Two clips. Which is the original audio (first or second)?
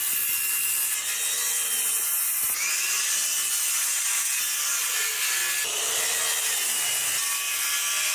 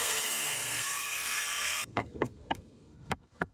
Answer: first